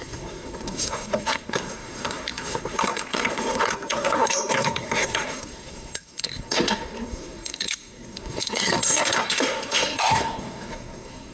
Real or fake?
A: fake